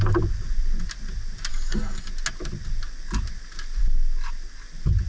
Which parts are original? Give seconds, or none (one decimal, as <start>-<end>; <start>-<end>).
0.0-1.5; 2.1-5.1

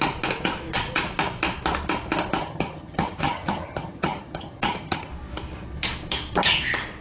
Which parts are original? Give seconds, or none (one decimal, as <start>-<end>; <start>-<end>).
0.0-2.4; 5.1-7.0

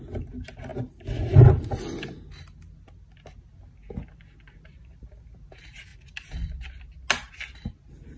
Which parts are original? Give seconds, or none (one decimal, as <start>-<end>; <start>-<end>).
0.0-8.2

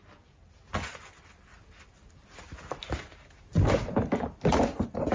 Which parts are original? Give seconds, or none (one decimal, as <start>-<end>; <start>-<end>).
0.0-5.1